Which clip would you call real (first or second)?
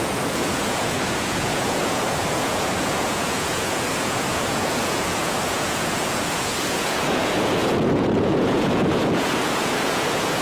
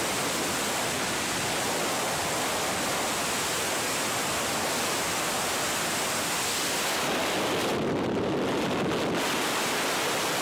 second